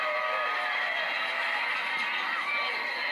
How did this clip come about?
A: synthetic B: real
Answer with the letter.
B